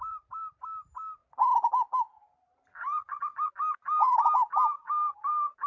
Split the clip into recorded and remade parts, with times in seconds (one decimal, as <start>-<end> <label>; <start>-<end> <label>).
0.0-1.2 remade; 1.2-2.8 recorded; 2.8-5.7 remade

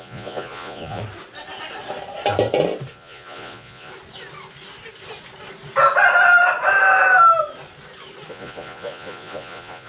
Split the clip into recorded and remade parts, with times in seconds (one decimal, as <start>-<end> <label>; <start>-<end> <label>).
0.0-1.0 remade; 1.0-2.9 recorded; 2.9-3.9 remade; 3.9-8.3 recorded; 8.3-9.9 remade

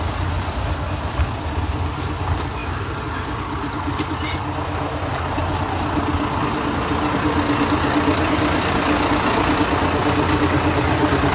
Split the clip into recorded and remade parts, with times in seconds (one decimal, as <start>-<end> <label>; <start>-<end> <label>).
0.0-11.3 recorded